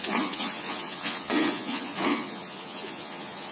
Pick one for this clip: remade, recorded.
remade